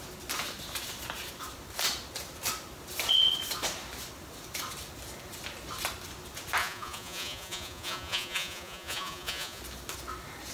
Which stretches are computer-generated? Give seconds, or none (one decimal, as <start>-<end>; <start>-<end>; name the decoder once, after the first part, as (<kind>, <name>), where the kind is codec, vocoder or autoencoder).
6.6-9.6 (vocoder, Vocos)